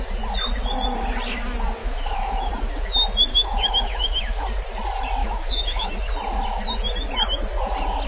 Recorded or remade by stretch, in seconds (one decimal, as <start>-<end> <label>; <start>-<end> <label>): 0.0-1.8 recorded; 1.8-2.5 remade; 2.5-3.3 recorded; 3.3-4.4 remade; 4.4-5.2 recorded; 5.2-5.9 remade; 5.9-8.1 recorded